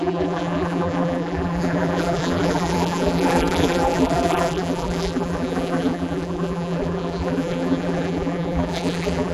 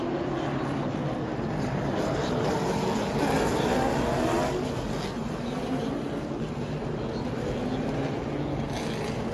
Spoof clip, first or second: first